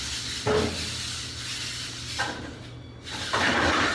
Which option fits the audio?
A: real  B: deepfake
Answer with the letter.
A